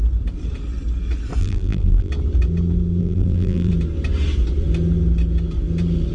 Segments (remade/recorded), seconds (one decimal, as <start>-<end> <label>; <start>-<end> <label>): 0.0-1.4 recorded; 1.4-2.1 remade; 2.1-3.0 recorded; 3.0-3.7 remade; 3.7-6.1 recorded